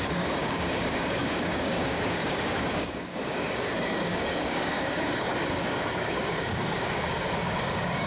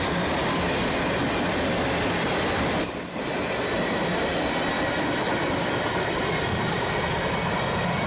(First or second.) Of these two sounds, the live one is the second